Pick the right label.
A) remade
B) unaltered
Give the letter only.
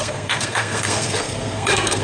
A